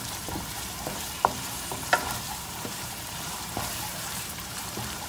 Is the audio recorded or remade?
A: remade